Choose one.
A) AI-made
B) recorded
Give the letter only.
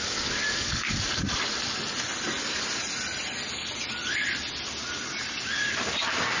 B